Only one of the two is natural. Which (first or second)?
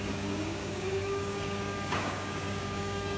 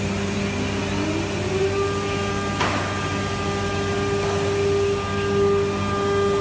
second